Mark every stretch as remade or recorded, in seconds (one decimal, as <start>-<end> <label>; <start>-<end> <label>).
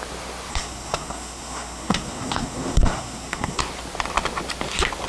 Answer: 0.0-0.5 recorded; 0.5-3.6 remade; 3.6-5.1 recorded